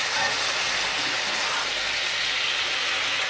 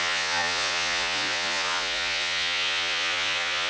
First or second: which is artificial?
second